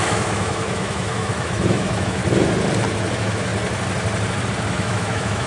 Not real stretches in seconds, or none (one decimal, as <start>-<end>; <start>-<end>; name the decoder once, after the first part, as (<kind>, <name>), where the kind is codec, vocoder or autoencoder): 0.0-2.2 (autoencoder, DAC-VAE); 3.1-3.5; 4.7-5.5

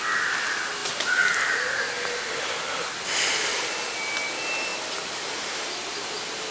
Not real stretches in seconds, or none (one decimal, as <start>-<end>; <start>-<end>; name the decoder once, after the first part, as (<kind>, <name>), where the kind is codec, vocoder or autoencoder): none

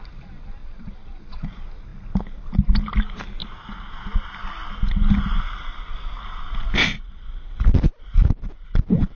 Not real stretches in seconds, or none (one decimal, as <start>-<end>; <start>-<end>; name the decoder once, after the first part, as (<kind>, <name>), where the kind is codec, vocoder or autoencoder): 0.6-1.5 (vocoder, Vocos)

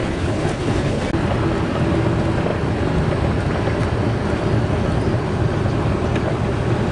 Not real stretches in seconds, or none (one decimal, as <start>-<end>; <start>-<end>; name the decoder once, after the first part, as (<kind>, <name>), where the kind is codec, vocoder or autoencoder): 0.0-1.0 (codec, HILCodec)

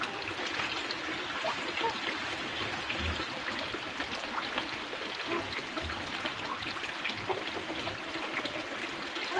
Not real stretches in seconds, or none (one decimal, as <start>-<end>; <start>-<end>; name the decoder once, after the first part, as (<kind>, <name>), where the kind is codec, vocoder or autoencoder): 5.6-6.1 (codec, DAC)